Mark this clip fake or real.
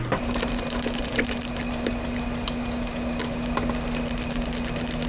real